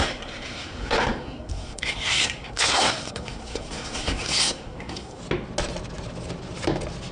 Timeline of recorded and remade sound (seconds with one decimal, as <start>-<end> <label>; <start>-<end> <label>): 0.0-5.2 remade; 5.2-7.1 recorded